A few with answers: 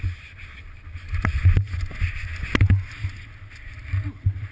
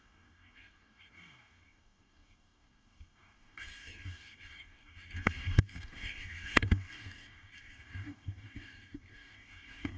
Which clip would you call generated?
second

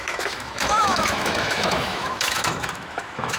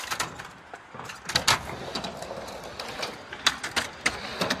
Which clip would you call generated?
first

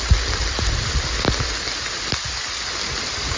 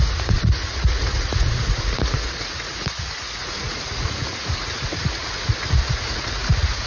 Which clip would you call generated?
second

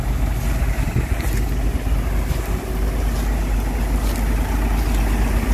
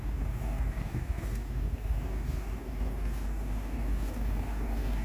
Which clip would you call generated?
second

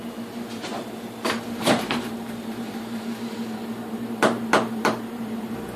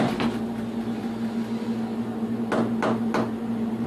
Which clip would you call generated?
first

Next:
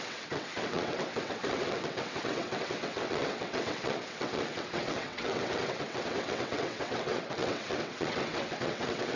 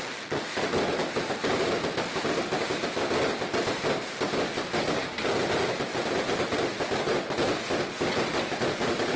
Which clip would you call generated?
first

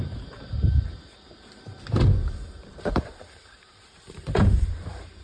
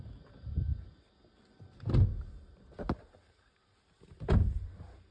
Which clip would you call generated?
first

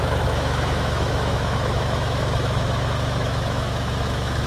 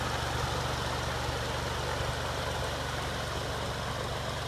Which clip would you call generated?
first